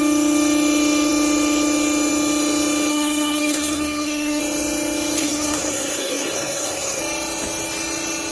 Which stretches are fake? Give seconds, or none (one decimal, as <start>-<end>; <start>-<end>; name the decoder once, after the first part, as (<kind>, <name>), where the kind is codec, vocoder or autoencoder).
2.9-4.4 (codec, SNAC); 5.2-7.0